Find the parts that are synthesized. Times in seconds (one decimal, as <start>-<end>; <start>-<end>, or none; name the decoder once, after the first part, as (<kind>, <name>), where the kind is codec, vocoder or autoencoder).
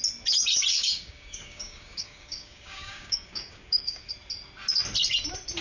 0.7-4.1 (codec, DAC)